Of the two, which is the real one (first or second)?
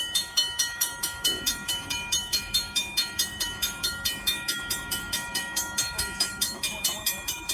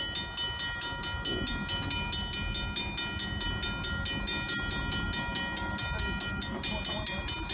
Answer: second